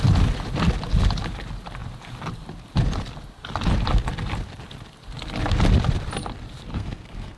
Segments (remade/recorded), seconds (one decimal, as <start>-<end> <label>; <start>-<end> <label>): 0.0-6.7 recorded; 6.7-7.4 remade